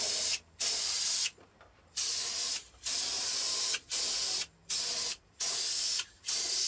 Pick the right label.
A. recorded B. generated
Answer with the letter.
A